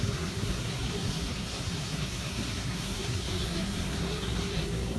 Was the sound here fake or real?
fake